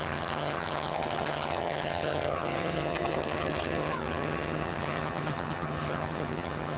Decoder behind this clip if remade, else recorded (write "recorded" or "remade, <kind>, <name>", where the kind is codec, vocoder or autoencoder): remade, vocoder, HiFi-GAN